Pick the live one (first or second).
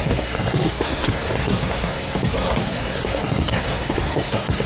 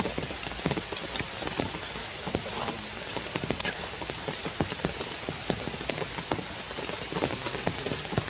second